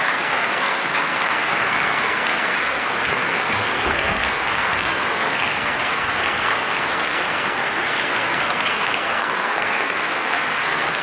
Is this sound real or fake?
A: fake